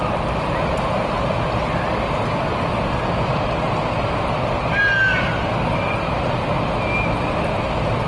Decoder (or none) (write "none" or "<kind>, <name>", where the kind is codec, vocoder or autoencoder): none